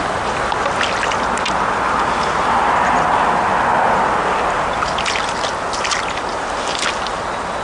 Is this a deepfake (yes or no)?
no